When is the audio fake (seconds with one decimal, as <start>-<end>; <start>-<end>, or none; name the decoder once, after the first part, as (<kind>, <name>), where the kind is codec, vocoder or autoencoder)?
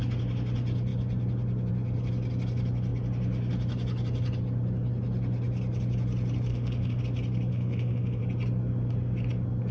6.5-7.0 (autoencoder, DAC-VAE); 7.5-8.2